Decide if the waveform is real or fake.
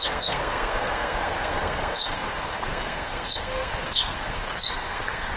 fake